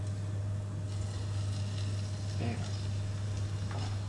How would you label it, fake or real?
real